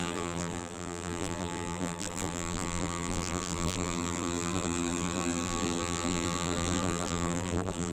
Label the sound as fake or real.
fake